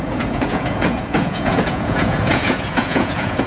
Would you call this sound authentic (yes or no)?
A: no